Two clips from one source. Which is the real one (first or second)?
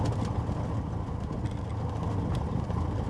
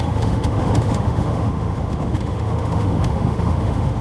first